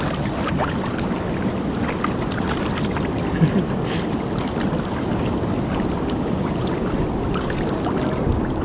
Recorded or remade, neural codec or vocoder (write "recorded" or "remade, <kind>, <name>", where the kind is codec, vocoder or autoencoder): recorded